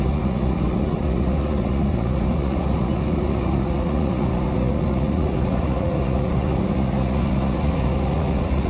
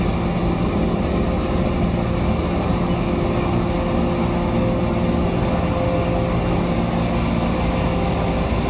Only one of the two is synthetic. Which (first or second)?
first